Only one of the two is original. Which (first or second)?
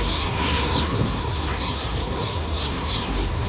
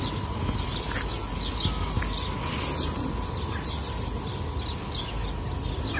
second